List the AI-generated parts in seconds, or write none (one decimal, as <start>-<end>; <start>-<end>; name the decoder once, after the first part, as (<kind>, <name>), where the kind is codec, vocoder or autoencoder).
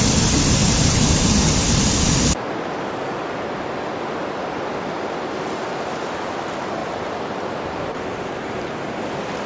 0.6-1.9 (vocoder, BigVGAN v2); 6.8-8.7